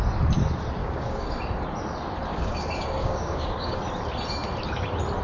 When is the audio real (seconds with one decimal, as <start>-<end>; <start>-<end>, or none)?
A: 0.0-0.8; 1.3-2.3; 3.8-5.2